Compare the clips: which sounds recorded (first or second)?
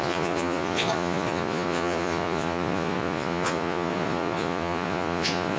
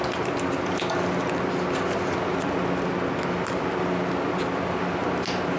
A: second